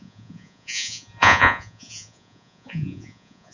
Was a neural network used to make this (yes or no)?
yes